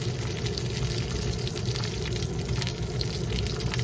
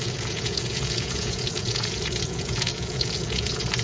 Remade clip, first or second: second